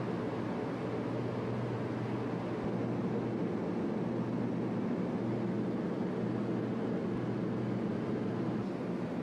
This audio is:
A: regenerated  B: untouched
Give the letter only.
B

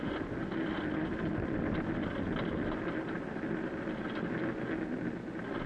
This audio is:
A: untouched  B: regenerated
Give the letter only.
A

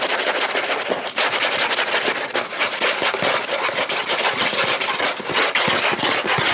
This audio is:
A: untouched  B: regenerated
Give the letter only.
A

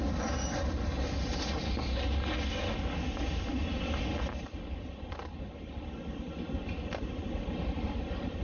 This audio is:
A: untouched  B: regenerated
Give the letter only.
A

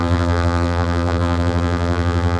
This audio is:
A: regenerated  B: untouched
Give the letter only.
A